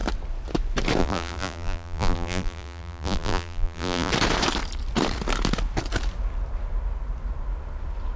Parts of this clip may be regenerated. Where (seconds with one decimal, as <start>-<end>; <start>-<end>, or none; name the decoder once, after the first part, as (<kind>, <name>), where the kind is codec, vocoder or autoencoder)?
1.0-4.1 (vocoder, BigVGAN v2)